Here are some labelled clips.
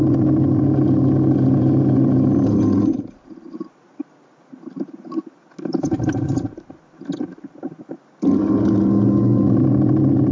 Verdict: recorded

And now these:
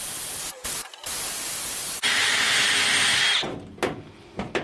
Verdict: recorded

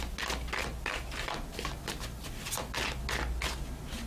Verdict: recorded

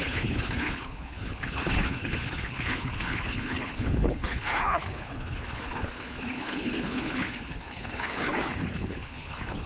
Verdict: remade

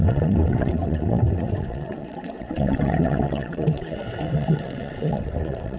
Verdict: remade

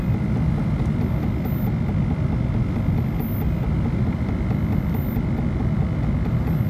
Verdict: recorded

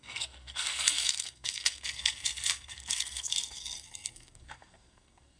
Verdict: remade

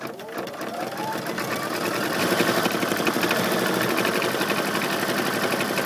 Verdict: recorded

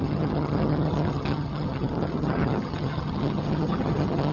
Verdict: remade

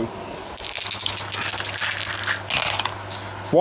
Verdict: recorded